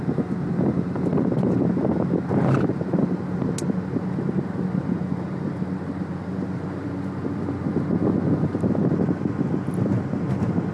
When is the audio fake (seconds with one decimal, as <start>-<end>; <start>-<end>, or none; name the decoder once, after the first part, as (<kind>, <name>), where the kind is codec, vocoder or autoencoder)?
none